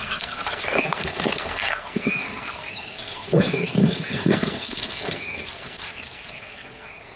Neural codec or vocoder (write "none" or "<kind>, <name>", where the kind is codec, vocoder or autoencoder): codec, SNAC